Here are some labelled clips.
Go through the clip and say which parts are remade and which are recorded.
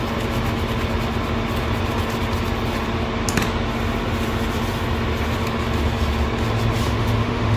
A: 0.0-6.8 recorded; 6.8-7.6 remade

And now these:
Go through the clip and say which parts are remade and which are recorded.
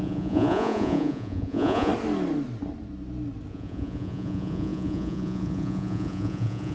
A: 0.0-1.9 remade; 1.9-3.5 recorded; 3.5-6.7 remade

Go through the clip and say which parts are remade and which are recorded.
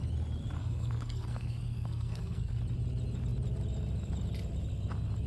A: 0.0-0.6 recorded; 0.6-2.6 remade; 2.6-5.3 recorded